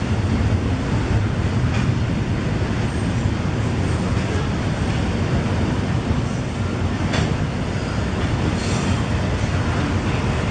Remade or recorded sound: recorded